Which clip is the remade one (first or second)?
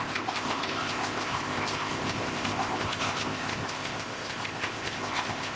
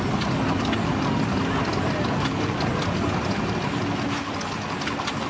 first